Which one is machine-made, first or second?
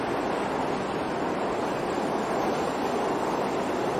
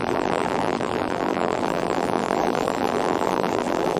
second